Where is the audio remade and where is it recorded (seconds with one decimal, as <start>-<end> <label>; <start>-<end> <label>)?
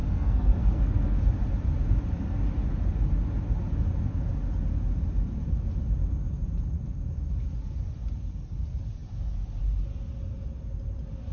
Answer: 0.0-1.2 remade; 1.2-11.3 recorded